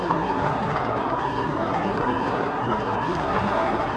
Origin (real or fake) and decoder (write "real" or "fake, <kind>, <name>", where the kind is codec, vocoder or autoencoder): fake, codec, SNAC